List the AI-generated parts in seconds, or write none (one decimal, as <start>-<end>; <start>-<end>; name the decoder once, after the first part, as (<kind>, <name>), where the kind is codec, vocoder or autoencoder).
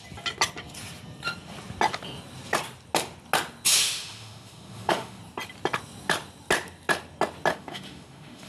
3.7-5.2 (autoencoder, DAC-VAE); 7.5-8.5